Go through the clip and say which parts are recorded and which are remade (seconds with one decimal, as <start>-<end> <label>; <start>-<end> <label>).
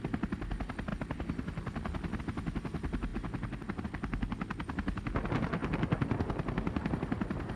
0.0-7.6 recorded